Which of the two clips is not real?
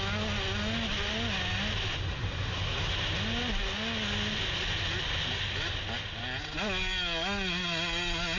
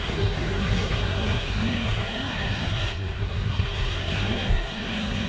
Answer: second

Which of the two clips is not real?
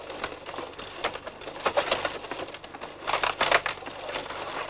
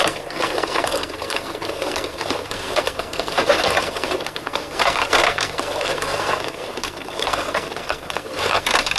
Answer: second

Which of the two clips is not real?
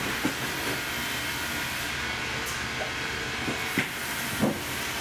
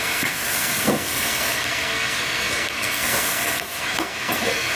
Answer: second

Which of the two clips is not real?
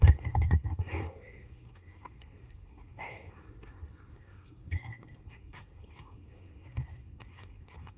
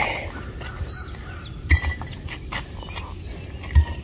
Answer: first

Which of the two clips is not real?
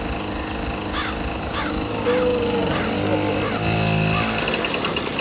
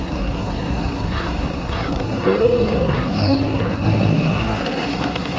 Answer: second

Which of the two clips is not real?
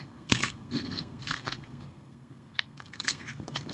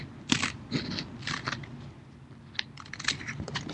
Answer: first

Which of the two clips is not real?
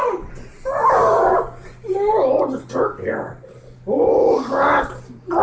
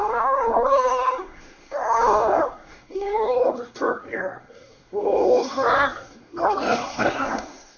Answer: second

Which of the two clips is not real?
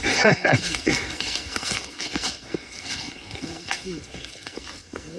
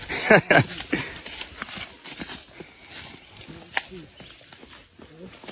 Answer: first